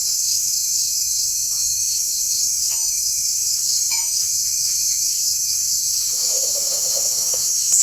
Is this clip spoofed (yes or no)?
yes